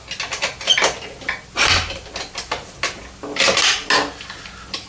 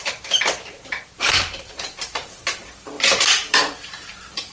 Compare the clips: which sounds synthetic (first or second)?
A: second